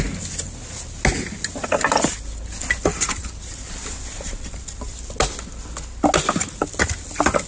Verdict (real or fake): real